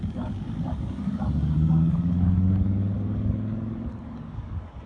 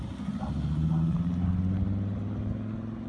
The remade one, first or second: first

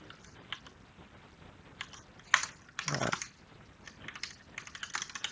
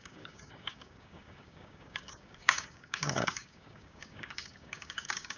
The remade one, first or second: second